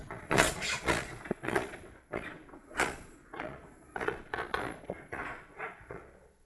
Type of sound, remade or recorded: remade